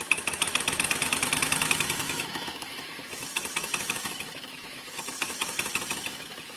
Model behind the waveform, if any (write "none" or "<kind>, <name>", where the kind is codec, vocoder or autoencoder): autoencoder, DAC-VAE